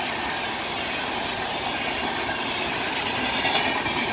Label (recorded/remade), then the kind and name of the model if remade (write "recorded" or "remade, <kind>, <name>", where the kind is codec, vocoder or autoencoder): recorded